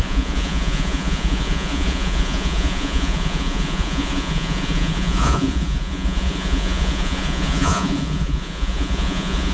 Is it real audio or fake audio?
fake